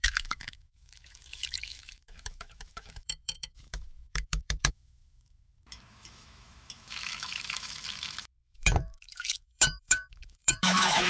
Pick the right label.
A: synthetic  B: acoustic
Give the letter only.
A